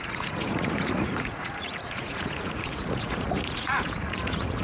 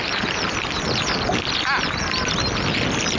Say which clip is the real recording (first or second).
second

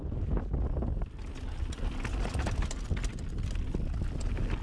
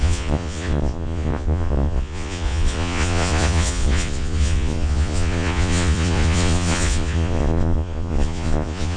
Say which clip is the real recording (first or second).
first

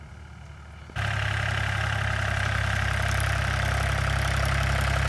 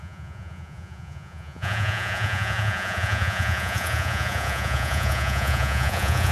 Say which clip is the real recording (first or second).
first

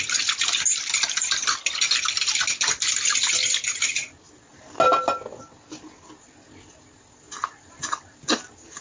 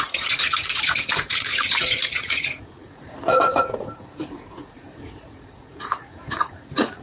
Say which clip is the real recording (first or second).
first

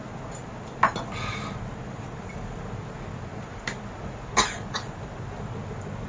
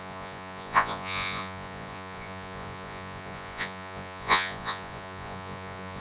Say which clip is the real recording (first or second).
first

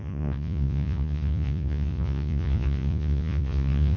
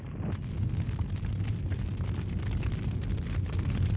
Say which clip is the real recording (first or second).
second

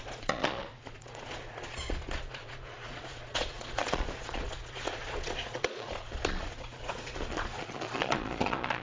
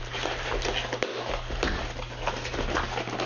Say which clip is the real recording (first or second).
second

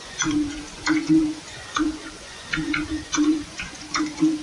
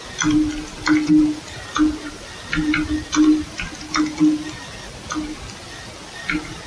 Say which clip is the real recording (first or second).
second